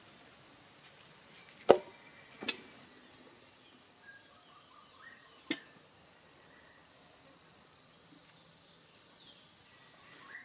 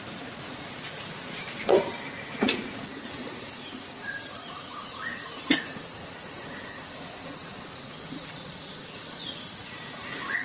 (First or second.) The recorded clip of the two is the first